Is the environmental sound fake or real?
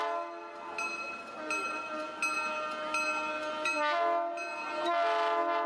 real